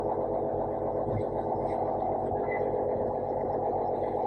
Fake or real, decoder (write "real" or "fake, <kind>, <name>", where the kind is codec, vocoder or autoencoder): real